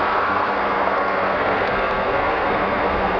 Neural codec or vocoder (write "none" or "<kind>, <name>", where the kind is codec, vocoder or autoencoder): codec, SNAC